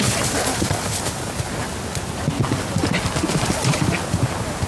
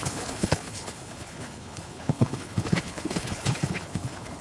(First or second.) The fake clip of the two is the second